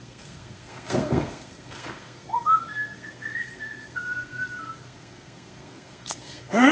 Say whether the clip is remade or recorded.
remade